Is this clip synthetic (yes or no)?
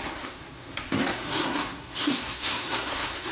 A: yes